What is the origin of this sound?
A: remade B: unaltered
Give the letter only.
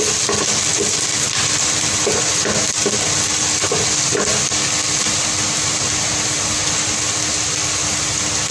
B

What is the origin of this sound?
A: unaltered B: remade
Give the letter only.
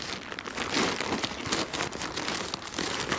A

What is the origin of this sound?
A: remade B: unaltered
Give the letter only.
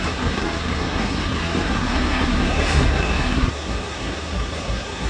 A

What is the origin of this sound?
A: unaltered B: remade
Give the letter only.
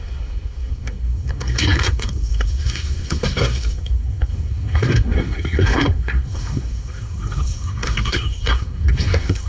B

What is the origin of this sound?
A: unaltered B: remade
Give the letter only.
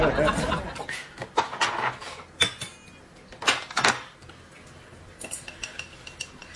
A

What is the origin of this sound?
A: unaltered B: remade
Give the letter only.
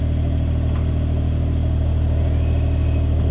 A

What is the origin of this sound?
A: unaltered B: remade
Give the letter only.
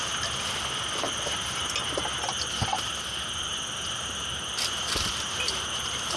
A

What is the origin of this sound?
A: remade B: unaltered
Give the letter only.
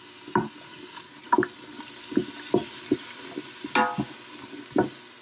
B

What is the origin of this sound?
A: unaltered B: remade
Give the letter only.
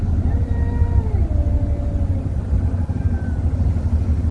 A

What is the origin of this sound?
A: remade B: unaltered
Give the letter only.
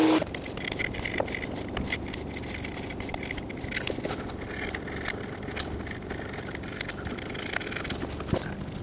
B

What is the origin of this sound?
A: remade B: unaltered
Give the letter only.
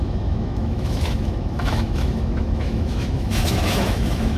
A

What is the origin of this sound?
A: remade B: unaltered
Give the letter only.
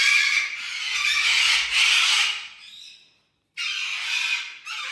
B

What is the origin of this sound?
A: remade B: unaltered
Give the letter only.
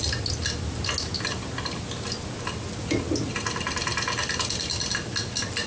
B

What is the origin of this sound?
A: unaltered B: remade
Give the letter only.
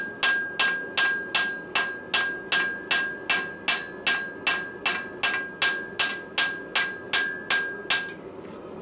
A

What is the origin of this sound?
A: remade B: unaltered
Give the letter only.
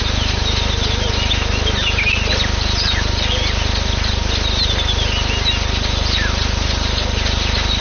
B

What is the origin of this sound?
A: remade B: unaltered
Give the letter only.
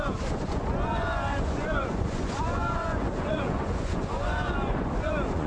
A